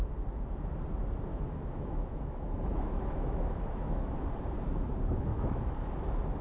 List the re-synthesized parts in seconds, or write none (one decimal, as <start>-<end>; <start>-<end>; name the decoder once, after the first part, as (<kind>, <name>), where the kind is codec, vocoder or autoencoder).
1.3-4.1 (autoencoder, DAC-VAE); 5.3-5.9